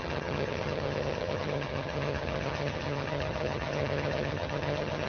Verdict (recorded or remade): remade